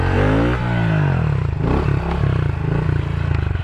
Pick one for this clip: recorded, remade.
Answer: recorded